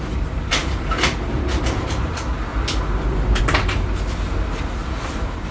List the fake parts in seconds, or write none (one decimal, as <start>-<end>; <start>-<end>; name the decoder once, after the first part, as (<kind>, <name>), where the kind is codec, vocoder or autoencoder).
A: 0.6-1.6 (vocoder, BigVGAN v2); 2.5-3.4; 4.8-5.5